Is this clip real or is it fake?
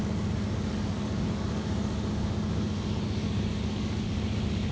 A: fake